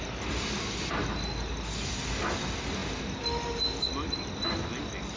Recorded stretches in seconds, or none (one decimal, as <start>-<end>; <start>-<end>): 0.0-5.2